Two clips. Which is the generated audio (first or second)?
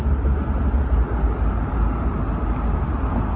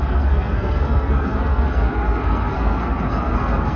second